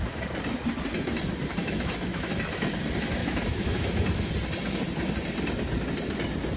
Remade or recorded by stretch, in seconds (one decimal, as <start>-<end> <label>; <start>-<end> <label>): 0.0-1.6 recorded; 1.6-2.8 remade; 2.8-3.2 recorded; 3.2-4.3 remade; 4.3-6.6 recorded